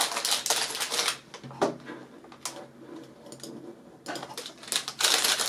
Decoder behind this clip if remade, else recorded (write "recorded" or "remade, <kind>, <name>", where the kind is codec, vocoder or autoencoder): recorded